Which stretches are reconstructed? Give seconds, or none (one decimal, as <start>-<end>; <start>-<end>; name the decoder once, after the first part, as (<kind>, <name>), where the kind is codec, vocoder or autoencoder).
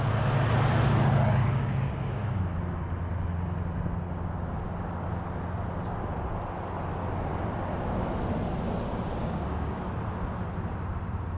1.4-2.4 (codec, DAC); 9.2-9.8